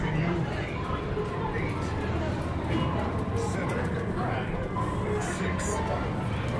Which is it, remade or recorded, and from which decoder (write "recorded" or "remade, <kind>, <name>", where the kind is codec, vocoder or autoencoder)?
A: recorded